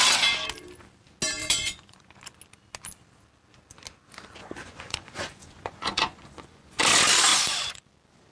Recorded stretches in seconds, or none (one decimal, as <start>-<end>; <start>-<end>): 0.0-1.4; 2.1-4.4; 6.8-7.3; 7.8-8.3